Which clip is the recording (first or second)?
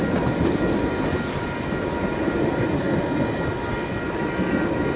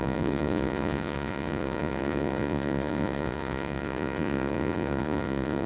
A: first